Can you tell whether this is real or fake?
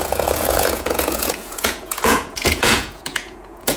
fake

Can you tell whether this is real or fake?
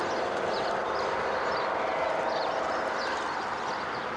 real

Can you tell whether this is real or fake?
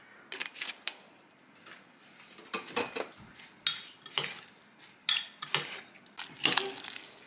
real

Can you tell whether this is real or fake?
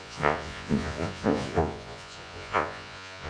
fake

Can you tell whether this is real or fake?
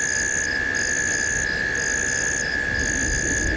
real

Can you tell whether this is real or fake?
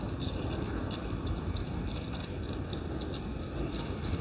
real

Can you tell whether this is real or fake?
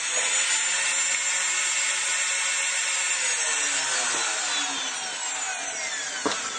real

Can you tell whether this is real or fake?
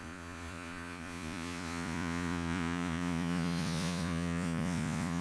fake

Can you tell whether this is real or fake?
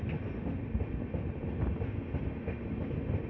real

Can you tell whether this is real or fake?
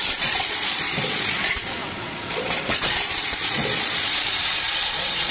fake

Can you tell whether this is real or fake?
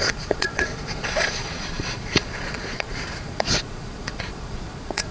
fake